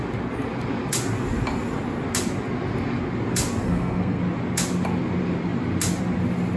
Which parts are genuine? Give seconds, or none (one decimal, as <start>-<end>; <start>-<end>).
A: 0.0-3.6; 4.2-6.6